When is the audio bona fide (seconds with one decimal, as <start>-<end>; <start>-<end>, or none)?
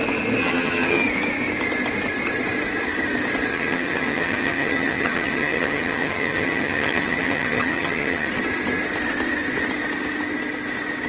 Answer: 0.0-0.4; 1.0-3.5; 8.3-11.1